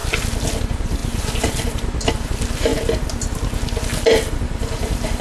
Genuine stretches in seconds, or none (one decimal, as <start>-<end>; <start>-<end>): 0.0-0.6; 2.7-4.4